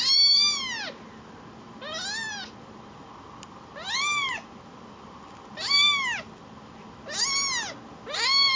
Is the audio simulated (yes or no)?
no